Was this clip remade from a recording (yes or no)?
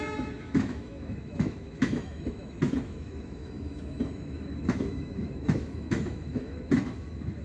yes